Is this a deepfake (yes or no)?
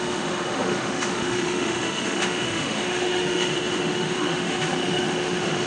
yes